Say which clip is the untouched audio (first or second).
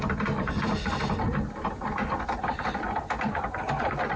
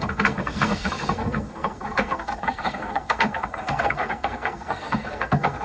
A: first